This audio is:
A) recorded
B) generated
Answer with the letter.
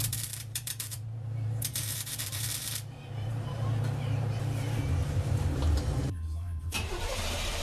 B